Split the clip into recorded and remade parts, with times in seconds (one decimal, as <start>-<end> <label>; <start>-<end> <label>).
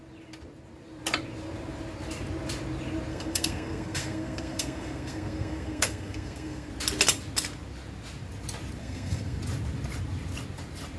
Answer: 0.0-3.1 recorded; 3.1-6.7 remade; 6.7-8.8 recorded; 8.8-9.4 remade; 9.4-11.0 recorded